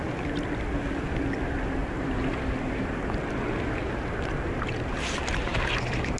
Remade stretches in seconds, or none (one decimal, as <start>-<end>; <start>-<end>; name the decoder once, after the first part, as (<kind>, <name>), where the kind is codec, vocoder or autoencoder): 1.8-3.2 (vocoder, BigVGAN v2); 5.5-6.2